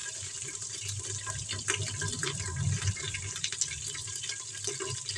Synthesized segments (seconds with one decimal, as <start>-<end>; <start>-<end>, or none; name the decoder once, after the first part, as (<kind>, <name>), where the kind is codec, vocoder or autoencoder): 0.0-1.0 (vocoder, BigVGAN v2)